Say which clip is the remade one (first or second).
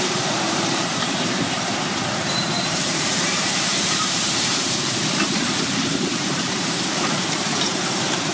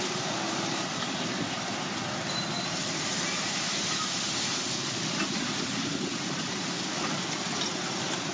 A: first